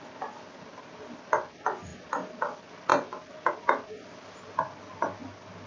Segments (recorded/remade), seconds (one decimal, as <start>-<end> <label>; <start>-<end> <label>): 0.0-5.7 recorded